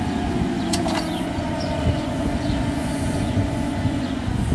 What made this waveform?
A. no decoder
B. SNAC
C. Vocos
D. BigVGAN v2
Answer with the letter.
C